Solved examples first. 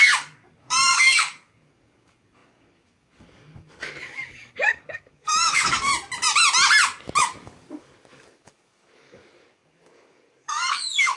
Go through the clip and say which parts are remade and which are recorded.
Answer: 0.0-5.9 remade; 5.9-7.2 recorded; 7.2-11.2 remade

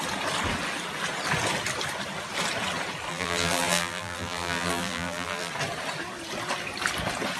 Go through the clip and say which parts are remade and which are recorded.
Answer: 0.0-3.1 recorded; 3.1-5.5 remade; 5.5-7.4 recorded